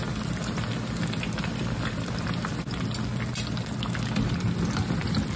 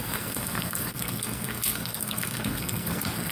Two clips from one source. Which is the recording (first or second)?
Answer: first